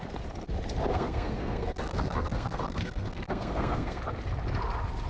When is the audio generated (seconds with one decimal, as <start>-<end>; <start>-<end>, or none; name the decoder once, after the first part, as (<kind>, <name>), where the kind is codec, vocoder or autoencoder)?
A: 0.9-4.0 (codec, SNAC)

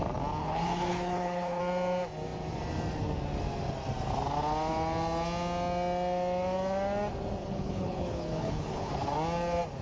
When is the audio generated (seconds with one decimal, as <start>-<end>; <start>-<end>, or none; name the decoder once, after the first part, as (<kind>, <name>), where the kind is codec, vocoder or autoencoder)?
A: 0.4-1.6 (codec, HILCodec); 7.4-8.9

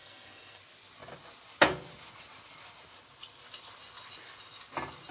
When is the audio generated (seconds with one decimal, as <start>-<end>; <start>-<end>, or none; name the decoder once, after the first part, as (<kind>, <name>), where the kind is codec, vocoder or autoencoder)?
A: 0.0-0.6 (codec, SNAC)

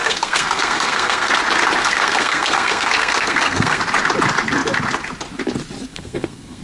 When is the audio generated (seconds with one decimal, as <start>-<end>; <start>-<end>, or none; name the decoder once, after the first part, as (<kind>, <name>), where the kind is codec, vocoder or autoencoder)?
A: 0.0-1.3 (codec, SNAC); 1.8-3.8; 5.9-6.6

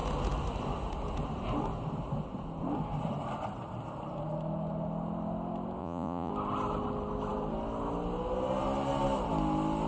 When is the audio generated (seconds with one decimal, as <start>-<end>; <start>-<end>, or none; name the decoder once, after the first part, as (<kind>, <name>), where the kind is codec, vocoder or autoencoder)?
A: 5.8-6.3 (vocoder, Vocos)

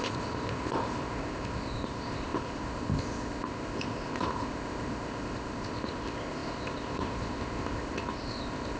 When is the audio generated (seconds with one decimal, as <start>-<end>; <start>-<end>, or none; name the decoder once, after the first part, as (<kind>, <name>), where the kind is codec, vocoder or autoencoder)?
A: 0.0-8.8 (codec, ZipCodec)